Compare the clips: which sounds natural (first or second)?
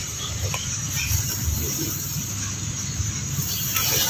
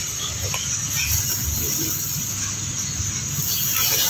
second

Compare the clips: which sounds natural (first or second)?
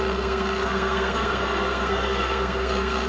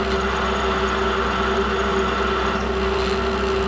second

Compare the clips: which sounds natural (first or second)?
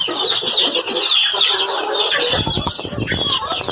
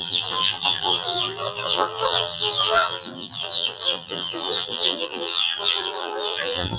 first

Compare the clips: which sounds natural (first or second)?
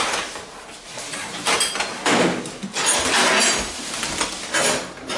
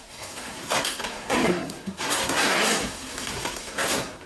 first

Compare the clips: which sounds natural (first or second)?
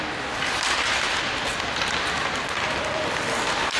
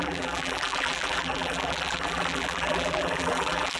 first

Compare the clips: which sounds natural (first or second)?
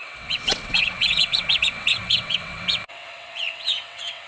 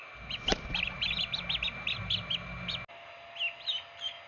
second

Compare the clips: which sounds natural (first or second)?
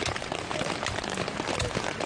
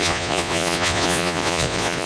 first